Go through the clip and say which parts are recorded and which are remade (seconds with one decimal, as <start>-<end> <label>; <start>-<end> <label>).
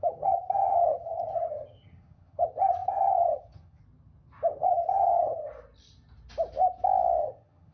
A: 0.0-3.8 remade; 3.8-4.5 recorded; 4.5-5.5 remade; 5.5-7.2 recorded; 7.2-7.7 remade